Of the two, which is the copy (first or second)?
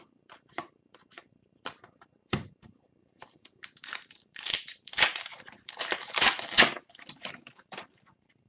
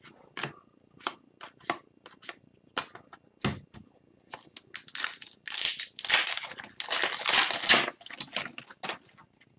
first